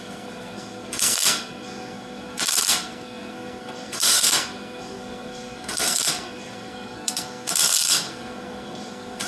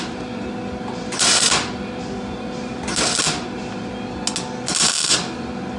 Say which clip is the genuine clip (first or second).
second